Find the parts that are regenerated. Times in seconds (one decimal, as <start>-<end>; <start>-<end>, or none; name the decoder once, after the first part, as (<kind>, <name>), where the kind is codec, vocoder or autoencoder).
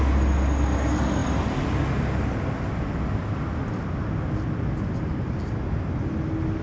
none